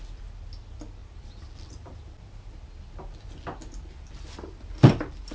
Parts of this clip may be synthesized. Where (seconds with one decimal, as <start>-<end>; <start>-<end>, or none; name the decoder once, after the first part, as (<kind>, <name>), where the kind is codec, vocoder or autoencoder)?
none